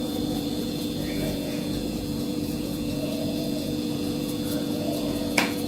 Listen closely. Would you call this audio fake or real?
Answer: fake